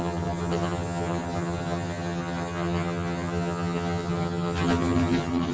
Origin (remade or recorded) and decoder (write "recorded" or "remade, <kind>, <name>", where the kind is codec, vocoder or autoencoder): remade, vocoder, HiFi-GAN